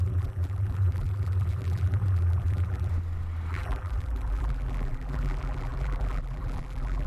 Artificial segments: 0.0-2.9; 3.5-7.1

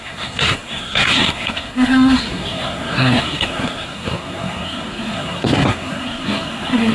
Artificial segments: 0.0-6.9

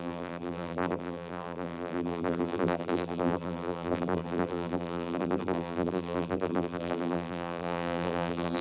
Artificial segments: 0.0-8.6